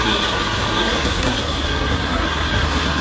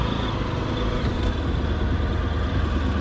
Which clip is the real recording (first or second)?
second